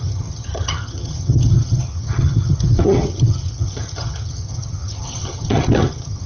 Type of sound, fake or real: fake